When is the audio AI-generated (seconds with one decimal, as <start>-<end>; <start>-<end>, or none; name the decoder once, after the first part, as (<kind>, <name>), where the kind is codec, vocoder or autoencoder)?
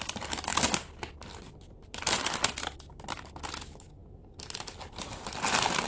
none